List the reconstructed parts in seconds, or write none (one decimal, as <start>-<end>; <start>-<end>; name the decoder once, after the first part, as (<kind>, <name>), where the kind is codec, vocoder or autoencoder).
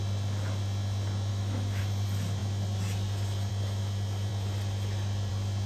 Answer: 1.3-1.8 (autoencoder, DAC-VAE)